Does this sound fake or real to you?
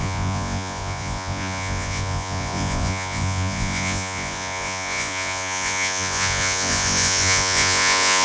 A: fake